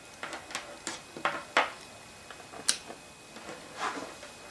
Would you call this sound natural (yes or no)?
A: yes